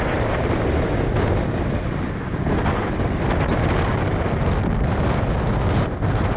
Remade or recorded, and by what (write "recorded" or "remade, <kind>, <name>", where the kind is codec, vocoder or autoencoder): recorded